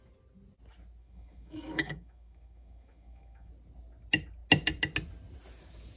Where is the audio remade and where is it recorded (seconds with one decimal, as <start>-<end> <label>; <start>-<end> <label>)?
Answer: 0.0-1.0 recorded; 1.0-3.5 remade; 3.5-6.0 recorded